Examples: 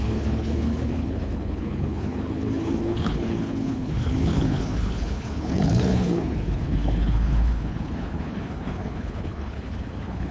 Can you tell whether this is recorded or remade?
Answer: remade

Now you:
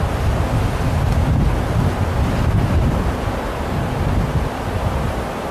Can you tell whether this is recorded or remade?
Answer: recorded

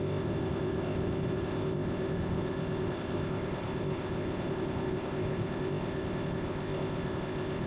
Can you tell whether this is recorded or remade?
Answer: remade